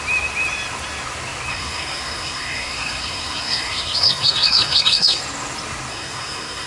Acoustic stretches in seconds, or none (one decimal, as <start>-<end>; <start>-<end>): 0.0-1.5; 5.2-5.9